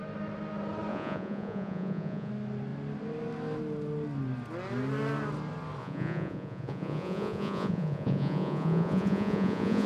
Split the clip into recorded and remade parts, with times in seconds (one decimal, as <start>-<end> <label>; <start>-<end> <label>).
0.0-0.9 recorded; 0.9-2.3 remade; 2.3-5.8 recorded; 5.8-9.9 remade